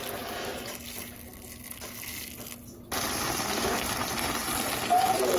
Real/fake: real